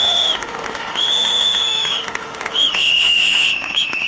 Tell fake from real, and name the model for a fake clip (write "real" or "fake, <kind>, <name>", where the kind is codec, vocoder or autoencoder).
fake, autoencoder, DAC-VAE